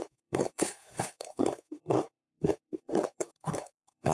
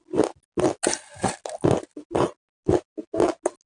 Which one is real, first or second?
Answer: second